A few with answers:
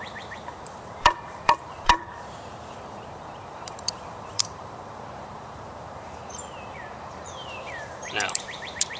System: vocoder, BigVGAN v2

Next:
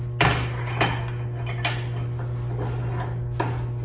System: none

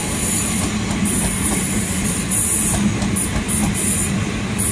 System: none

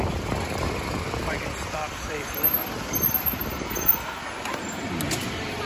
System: none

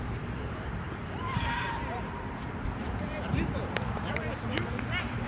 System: vocoder, BigVGAN v2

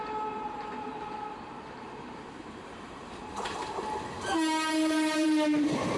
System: vocoder, BigVGAN v2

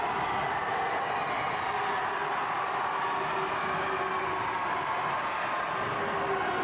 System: none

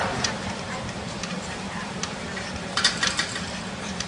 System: vocoder, BigVGAN v2